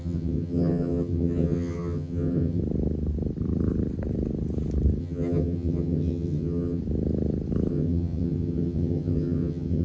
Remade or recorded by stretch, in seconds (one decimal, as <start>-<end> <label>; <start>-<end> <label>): 0.0-2.6 remade; 2.6-5.0 recorded; 5.0-6.8 remade; 6.8-7.7 recorded; 7.7-9.8 remade